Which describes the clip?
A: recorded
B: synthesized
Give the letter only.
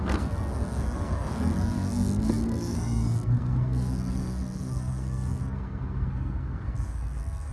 B